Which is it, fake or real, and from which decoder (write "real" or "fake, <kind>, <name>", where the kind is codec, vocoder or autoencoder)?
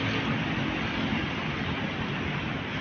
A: real